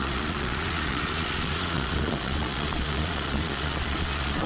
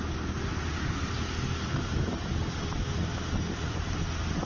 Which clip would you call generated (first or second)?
first